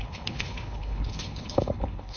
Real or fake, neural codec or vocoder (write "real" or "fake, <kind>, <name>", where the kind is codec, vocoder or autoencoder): fake, codec, HILCodec